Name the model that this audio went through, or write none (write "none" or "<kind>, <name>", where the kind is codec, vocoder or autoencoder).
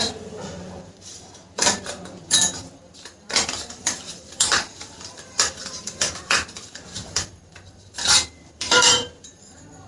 vocoder, BigVGAN v2